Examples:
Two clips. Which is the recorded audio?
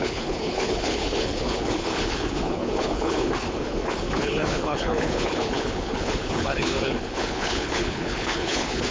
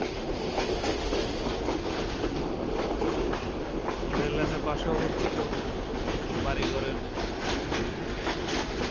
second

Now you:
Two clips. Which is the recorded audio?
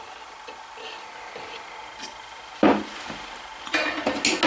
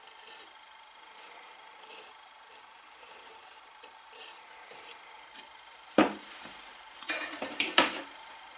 first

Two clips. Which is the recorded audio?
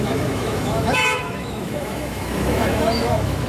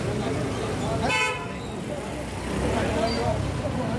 second